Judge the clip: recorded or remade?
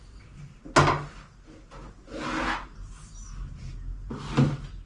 recorded